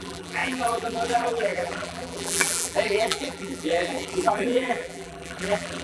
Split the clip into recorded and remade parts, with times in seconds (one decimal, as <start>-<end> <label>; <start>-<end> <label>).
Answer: 0.0-5.8 remade